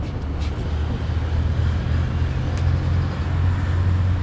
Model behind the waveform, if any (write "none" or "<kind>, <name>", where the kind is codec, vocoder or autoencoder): none